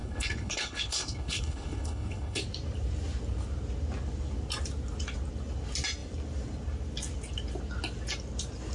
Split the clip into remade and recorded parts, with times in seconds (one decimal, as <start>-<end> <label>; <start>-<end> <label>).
0.0-2.4 remade; 2.4-8.7 recorded